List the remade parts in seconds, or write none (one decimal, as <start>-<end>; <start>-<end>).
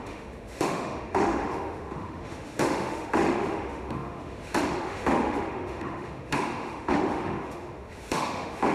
0.0-8.7